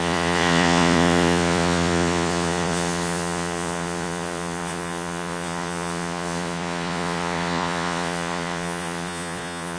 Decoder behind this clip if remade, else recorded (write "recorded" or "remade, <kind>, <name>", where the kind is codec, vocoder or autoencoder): remade, vocoder, Vocos